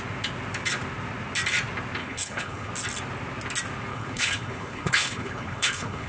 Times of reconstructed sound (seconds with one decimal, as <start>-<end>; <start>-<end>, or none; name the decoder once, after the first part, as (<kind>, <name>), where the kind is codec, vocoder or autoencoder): 2.0-2.7 (codec, HILCodec); 3.9-6.1